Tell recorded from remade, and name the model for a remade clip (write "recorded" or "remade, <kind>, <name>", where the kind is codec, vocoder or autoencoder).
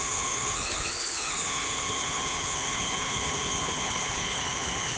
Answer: remade, codec, HILCodec